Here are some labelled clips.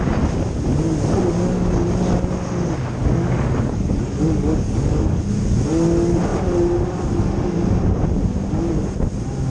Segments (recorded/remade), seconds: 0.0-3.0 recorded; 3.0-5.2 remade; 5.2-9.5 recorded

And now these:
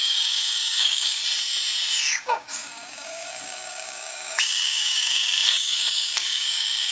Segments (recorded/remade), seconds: 0.0-1.2 remade; 1.2-2.1 recorded; 2.1-6.9 remade

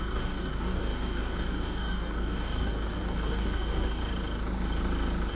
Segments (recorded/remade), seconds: 0.0-4.0 remade; 4.0-5.3 recorded

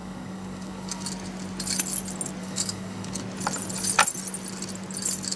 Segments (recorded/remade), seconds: 0.0-1.1 remade; 1.1-2.4 recorded; 2.4-3.2 remade; 3.2-5.4 recorded

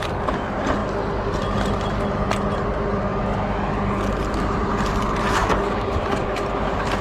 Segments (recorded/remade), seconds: 0.0-5.4 recorded; 5.4-6.4 remade; 6.4-7.0 recorded